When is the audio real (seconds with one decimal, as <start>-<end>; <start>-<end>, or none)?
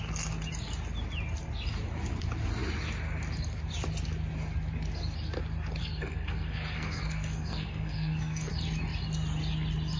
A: 0.0-5.8; 8.5-10.0